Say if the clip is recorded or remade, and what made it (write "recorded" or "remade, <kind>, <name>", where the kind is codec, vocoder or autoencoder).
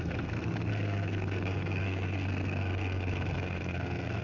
remade, codec, SNAC